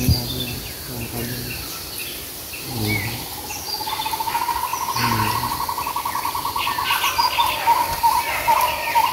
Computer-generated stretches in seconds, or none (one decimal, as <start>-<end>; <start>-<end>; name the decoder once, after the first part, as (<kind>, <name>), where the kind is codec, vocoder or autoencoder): none